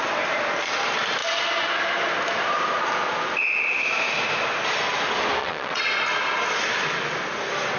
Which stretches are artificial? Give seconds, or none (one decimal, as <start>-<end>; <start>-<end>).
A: 5.4-6.0